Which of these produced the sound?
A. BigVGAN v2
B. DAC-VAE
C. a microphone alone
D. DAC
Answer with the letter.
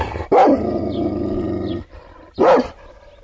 C